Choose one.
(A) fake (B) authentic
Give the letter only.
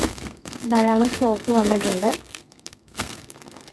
A